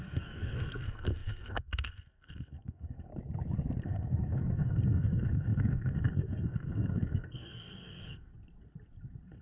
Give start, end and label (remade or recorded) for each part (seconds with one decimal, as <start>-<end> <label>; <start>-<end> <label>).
0.0-3.1 remade; 3.1-3.8 recorded; 3.8-8.3 remade; 8.3-9.4 recorded